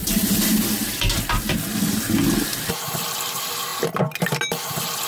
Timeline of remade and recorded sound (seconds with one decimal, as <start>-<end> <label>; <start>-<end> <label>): 0.0-5.1 recorded